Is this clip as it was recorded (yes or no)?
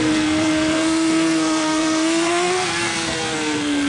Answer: no